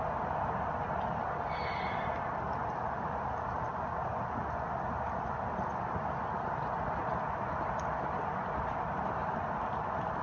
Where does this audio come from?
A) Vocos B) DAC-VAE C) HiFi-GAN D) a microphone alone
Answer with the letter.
D